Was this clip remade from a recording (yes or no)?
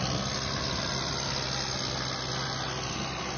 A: no